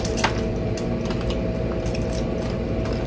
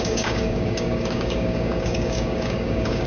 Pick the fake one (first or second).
second